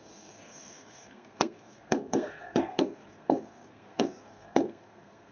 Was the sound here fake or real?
fake